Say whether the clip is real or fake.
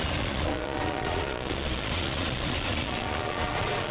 fake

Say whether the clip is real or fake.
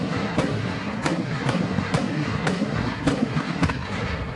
fake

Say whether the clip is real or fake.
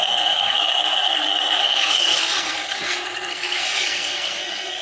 fake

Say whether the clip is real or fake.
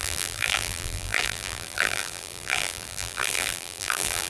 fake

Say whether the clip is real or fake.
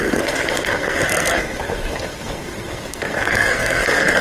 fake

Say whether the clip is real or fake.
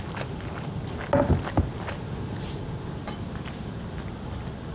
real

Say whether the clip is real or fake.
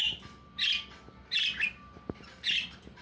real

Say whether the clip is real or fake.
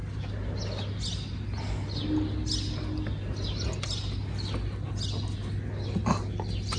real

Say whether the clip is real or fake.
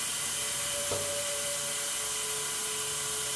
real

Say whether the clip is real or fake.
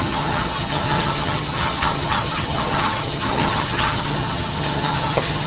fake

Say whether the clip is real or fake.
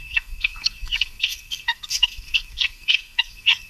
fake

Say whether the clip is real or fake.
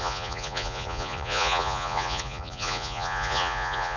fake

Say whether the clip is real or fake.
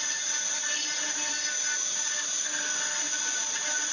real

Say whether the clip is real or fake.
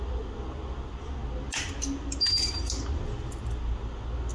real